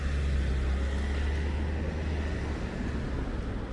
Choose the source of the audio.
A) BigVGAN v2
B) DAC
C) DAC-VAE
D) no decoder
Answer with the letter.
D